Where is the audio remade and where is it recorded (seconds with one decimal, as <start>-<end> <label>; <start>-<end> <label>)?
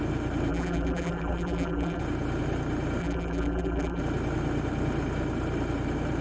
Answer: 0.0-0.5 recorded; 0.5-2.0 remade; 2.0-3.0 recorded; 3.0-4.0 remade; 4.0-6.2 recorded